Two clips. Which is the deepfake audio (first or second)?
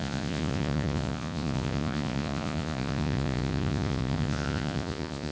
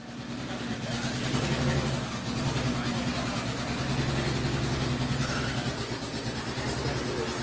first